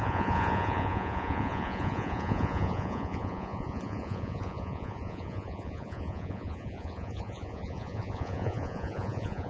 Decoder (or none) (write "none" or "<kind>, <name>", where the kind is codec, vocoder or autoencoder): vocoder, Vocos